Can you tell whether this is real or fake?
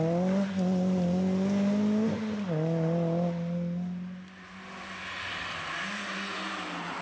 real